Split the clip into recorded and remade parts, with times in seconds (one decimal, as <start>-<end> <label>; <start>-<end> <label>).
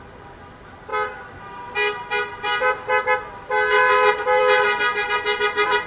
0.0-5.9 recorded